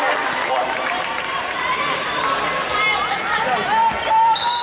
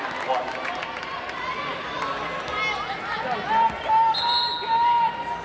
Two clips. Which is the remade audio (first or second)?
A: first